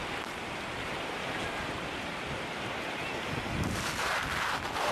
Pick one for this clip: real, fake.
real